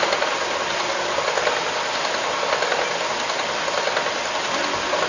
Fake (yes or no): no